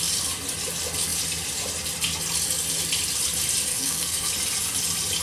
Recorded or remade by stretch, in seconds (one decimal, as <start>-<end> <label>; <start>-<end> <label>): 0.0-3.7 recorded; 3.7-4.3 remade; 4.3-5.2 recorded